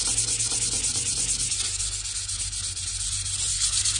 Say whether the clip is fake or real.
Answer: real